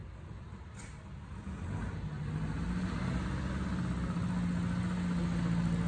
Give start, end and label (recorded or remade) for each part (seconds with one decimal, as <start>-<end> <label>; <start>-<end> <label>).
0.0-5.9 recorded